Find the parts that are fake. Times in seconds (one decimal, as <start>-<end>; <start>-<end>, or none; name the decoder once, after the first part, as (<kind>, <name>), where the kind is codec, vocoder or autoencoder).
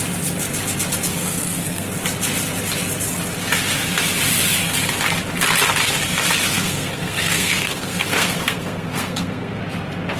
1.1-1.9 (codec, SNAC); 6.5-9.6